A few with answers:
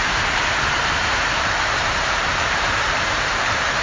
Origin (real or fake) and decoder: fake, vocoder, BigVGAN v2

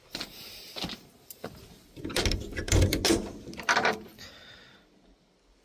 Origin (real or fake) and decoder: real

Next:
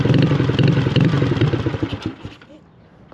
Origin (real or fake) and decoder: real